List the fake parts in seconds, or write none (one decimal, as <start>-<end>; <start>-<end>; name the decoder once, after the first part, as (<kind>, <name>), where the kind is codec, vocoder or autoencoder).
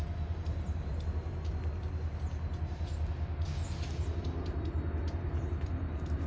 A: none